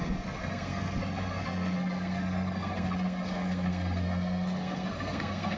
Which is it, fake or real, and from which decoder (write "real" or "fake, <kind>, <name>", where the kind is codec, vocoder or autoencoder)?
fake, codec, SNAC